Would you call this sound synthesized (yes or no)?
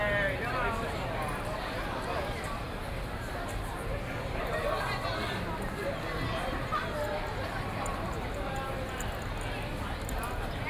no